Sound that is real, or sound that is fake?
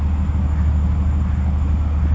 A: real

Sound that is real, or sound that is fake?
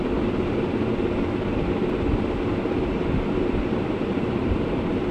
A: real